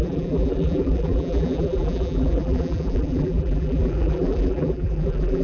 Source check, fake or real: fake